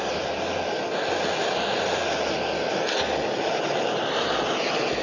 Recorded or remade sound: recorded